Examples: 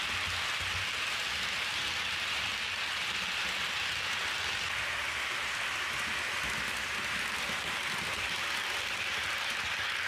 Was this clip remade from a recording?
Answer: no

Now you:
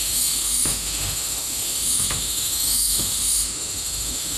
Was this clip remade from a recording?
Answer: yes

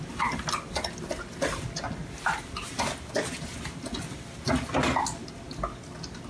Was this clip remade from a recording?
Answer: no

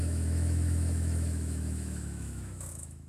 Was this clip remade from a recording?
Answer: yes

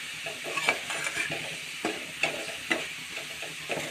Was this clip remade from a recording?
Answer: no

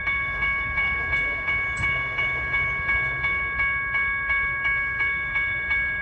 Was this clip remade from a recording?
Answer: yes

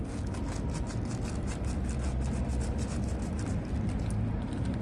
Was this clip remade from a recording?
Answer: no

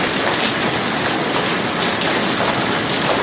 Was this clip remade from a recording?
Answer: no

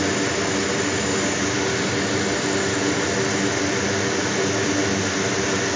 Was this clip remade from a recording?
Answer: no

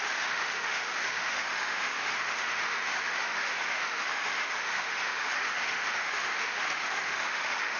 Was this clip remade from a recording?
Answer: yes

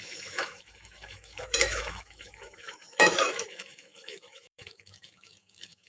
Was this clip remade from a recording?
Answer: yes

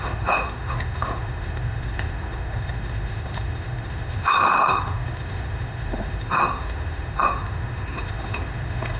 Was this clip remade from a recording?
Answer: yes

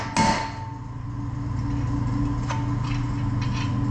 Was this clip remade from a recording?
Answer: no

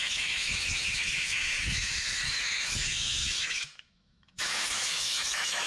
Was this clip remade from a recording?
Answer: yes